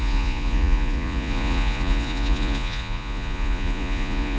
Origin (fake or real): fake